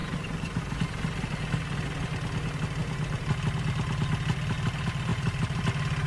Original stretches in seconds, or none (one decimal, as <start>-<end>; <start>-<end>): 0.6-5.1; 5.6-6.1